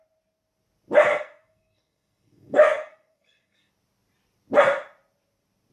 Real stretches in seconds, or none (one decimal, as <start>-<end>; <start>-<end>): 0.0-1.1; 3.7-5.7